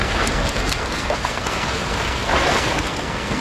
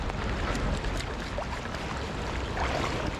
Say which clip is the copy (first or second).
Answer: first